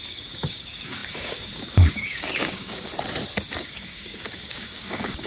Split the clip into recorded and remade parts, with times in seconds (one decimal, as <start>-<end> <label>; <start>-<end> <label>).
0.0-2.9 remade; 2.9-3.5 recorded; 3.5-5.3 remade